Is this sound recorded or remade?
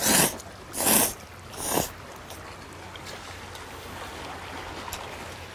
recorded